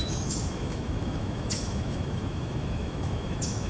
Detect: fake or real fake